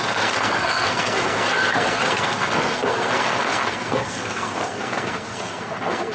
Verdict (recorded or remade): remade